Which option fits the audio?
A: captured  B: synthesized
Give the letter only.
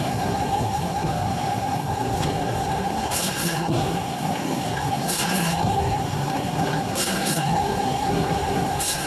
B